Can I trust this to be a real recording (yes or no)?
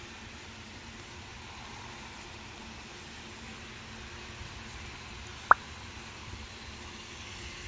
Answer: yes